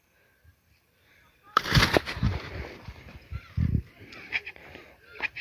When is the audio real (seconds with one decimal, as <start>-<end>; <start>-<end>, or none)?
0.0-0.5; 2.5-5.4